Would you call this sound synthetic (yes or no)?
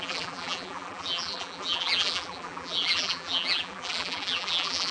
yes